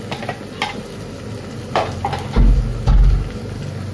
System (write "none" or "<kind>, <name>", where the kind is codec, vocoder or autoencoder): none